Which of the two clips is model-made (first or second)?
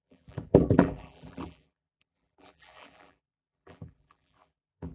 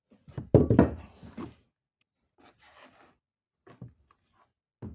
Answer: first